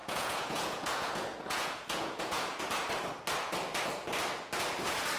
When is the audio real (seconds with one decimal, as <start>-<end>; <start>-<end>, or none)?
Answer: 2.6-5.2